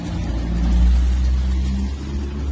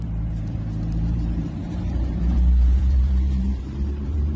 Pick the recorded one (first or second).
first